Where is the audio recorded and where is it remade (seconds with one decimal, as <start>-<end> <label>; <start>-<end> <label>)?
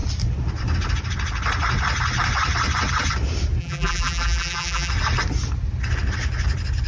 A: 0.0-3.6 recorded; 3.6-4.9 remade; 4.9-6.9 recorded